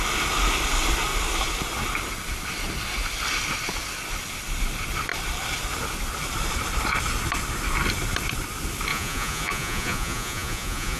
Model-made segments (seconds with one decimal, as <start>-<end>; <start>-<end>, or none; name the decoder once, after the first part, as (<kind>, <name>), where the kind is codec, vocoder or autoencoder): 8.9-11.0 (vocoder, Vocos)